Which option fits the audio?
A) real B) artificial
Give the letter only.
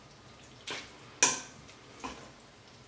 A